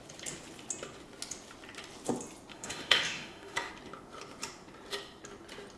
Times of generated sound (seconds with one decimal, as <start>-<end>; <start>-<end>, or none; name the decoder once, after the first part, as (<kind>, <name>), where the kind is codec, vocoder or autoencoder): 2.5-3.7 (autoencoder, DAC-VAE)